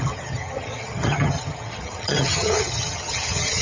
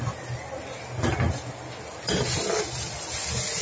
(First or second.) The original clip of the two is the second